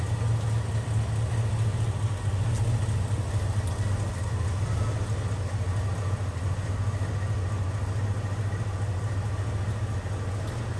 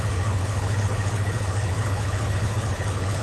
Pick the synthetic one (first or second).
second